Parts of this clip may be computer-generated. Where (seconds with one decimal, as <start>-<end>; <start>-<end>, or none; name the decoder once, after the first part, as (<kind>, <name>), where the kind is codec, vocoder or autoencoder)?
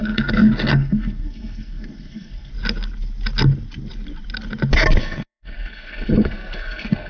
0.0-2.5 (codec, SNAC); 5.0-7.1